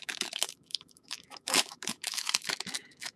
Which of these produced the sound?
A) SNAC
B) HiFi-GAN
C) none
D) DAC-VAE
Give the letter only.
D